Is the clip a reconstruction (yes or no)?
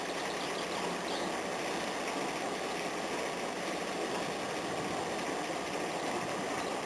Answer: no